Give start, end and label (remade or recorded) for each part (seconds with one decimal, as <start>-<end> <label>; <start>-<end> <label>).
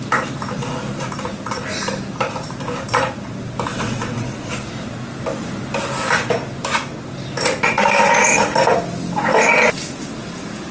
0.0-3.7 recorded; 3.7-4.5 remade; 4.5-10.7 recorded